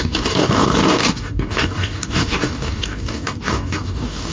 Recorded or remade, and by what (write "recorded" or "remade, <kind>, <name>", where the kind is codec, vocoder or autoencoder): remade, codec, DAC